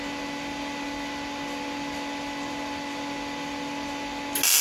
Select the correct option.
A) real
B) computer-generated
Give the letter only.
A